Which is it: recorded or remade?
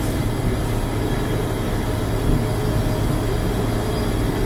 recorded